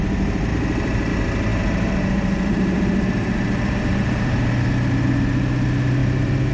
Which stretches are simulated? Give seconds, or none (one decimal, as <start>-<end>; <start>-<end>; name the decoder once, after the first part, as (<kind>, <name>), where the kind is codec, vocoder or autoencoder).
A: 0.5-1.1 (vocoder, BigVGAN v2); 1.5-4.5; 6.0-6.5